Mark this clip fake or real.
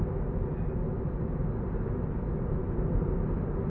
real